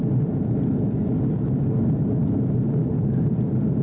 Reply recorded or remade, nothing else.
recorded